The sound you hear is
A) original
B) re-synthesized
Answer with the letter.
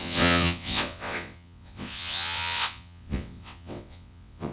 B